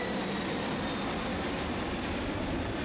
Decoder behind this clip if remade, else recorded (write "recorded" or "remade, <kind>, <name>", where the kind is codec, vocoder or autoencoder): recorded